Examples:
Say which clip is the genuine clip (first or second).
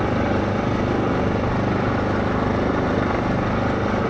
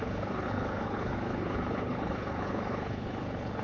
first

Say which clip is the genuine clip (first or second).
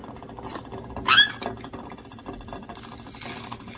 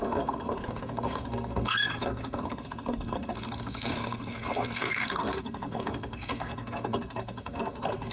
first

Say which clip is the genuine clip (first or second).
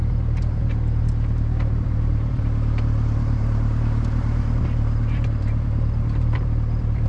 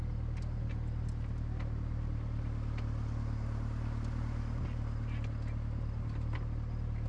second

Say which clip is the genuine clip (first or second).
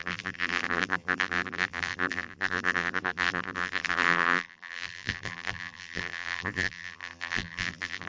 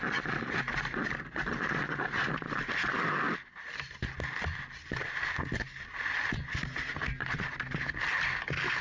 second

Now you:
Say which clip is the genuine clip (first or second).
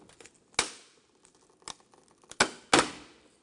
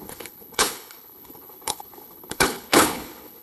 first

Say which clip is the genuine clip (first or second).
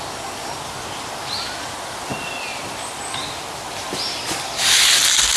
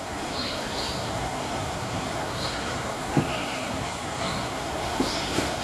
first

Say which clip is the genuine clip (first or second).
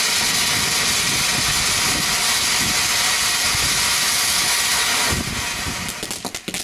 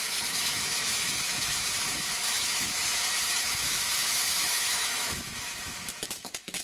first